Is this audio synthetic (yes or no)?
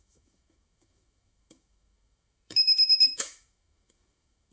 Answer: yes